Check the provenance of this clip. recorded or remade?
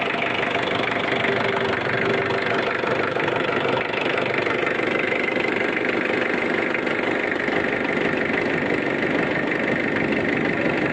recorded